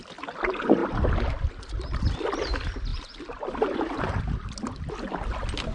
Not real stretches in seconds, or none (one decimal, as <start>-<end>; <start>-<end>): none